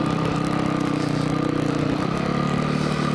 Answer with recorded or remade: recorded